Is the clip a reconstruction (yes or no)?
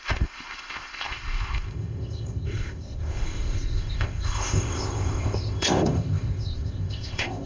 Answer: yes